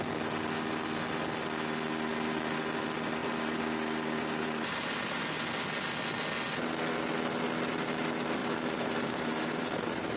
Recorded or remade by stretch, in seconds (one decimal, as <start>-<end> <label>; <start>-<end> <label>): 0.0-3.2 recorded; 3.2-5.2 remade; 5.2-8.4 recorded; 8.4-10.2 remade